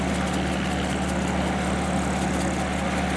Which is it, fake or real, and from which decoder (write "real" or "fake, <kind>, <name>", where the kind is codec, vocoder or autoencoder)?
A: real